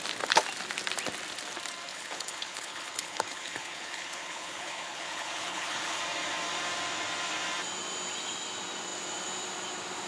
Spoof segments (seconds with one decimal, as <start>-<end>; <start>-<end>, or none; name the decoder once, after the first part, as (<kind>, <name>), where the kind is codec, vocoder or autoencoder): 1.9-6.0 (codec, HILCodec)